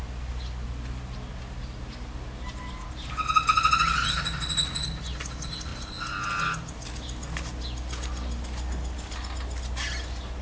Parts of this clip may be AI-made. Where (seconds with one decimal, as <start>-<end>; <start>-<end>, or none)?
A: none